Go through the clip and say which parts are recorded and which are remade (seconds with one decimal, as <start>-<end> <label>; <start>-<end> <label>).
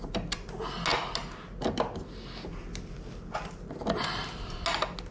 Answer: 0.0-5.1 recorded